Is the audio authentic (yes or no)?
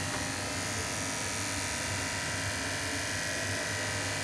yes